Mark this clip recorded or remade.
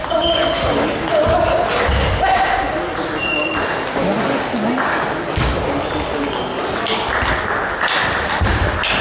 recorded